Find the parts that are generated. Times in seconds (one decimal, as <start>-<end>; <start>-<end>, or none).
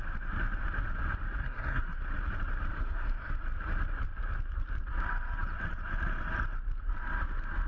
1.4-2.0; 2.8-3.3